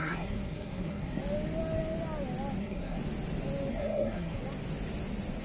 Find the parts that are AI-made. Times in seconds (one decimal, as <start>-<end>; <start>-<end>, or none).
0.0-1.2; 2.6-3.0; 3.7-4.4